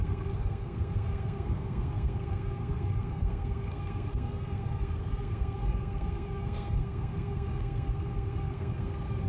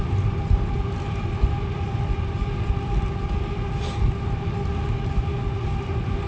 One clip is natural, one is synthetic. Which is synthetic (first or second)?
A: first